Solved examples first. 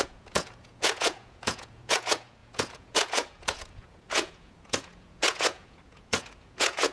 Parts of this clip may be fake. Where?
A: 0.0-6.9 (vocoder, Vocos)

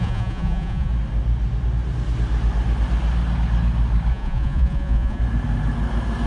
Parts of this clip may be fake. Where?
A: 0.0-0.9 (vocoder, Vocos); 4.1-5.2

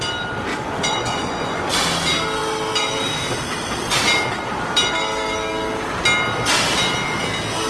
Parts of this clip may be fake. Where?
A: 0.5-1.6 (vocoder, Vocos)